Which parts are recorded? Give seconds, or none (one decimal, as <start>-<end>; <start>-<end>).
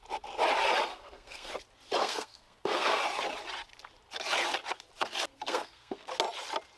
0.0-0.9; 1.5-2.0; 3.0-5.3; 6.1-6.8